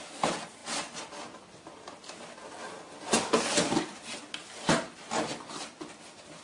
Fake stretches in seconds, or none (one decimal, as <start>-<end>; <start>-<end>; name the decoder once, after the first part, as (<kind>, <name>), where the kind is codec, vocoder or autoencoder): none